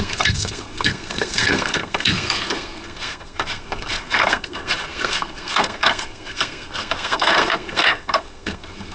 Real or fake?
fake